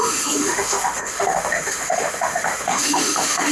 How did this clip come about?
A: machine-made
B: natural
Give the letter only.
A